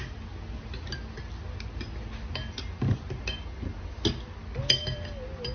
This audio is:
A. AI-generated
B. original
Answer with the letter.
B